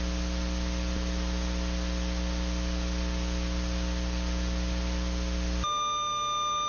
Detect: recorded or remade recorded